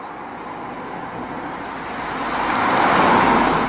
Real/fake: real